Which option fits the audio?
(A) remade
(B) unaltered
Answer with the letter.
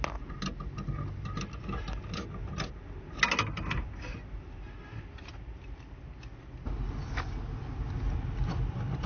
B